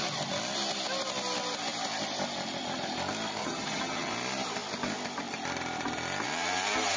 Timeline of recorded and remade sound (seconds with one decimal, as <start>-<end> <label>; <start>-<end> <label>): 0.0-3.4 recorded; 3.4-4.1 remade; 4.1-7.0 recorded